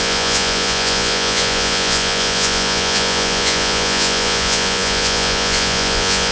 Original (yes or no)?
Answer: no